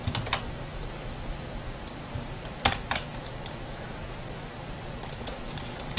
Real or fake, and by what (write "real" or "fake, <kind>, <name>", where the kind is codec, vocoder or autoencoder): real